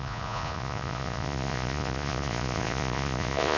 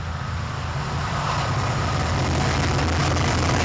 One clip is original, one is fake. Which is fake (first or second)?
first